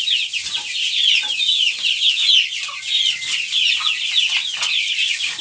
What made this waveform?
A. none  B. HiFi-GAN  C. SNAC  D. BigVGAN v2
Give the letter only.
A